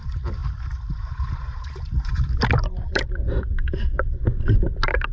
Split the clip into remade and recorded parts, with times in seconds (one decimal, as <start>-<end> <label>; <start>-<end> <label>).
0.0-0.4 recorded; 0.4-3.0 remade; 3.0-5.1 recorded

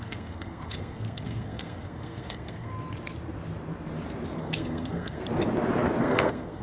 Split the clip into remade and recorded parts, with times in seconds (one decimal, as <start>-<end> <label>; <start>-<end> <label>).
0.0-2.7 remade; 2.7-4.4 recorded; 4.4-5.2 remade; 5.2-6.0 recorded; 6.0-6.6 remade

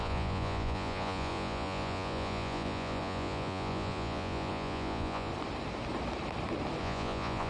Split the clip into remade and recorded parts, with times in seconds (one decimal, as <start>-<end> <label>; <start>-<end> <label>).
0.0-5.3 remade; 5.3-6.8 recorded; 6.8-7.5 remade

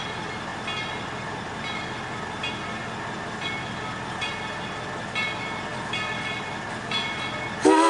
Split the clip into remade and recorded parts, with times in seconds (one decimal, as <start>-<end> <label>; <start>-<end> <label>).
0.0-7.9 recorded